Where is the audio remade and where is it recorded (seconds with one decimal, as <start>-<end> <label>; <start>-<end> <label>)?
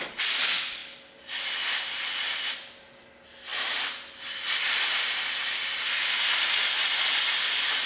0.0-7.9 recorded